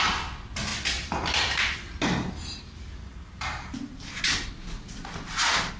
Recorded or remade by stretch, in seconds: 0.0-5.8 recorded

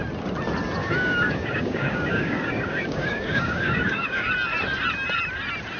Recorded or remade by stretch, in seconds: 0.0-0.8 recorded; 0.8-4.3 remade; 4.3-5.8 recorded

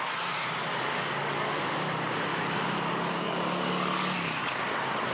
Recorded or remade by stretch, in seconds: 0.0-0.6 recorded; 0.6-1.6 remade; 1.6-2.3 recorded; 2.3-4.5 remade; 4.5-5.1 recorded

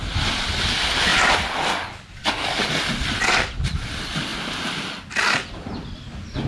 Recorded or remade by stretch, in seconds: 0.0-2.2 recorded; 2.2-2.7 remade; 2.7-6.5 recorded

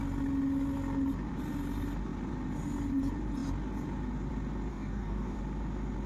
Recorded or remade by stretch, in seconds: 0.0-4.7 recorded; 4.7-5.4 remade; 5.4-6.1 recorded

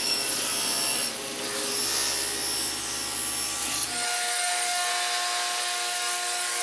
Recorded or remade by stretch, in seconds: 0.0-0.5 remade; 0.5-1.1 recorded; 1.1-1.8 remade; 1.8-3.6 recorded; 3.6-4.9 remade; 4.9-5.6 recorded; 5.6-6.6 remade

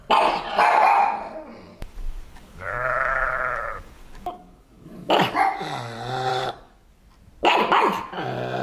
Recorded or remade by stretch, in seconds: 0.0-1.7 recorded; 1.7-5.1 remade; 5.1-6.3 recorded; 6.3-7.0 remade; 7.0-8.6 recorded